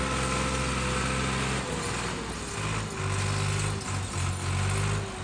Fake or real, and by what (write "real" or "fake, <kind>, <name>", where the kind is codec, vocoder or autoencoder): real